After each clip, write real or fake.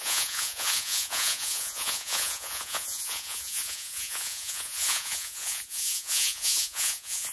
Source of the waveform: fake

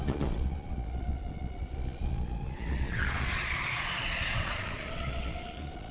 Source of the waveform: fake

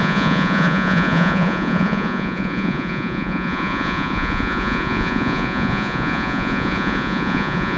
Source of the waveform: fake